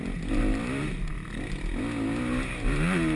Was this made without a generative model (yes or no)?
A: yes